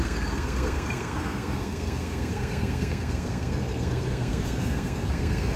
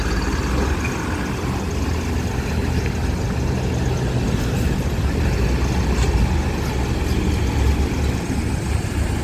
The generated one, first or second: first